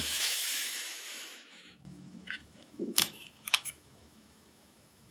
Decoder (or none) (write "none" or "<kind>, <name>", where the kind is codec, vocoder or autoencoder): autoencoder, DAC-VAE